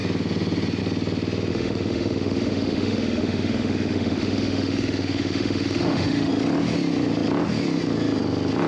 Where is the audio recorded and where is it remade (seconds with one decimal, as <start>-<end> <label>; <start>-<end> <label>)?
0.0-1.5 recorded; 1.5-6.3 remade; 6.3-8.7 recorded